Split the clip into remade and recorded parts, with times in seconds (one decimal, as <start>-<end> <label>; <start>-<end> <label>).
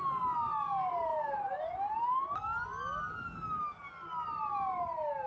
0.0-5.3 recorded